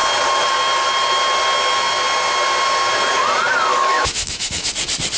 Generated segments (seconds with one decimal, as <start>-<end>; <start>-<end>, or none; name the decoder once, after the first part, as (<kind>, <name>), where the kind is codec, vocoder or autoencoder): 3.7-4.7 (autoencoder, DAC-VAE)